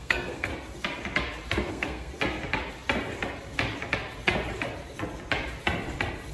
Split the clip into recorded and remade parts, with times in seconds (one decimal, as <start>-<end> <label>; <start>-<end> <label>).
0.0-0.5 remade; 0.5-1.7 recorded; 1.7-2.1 remade; 2.1-6.3 recorded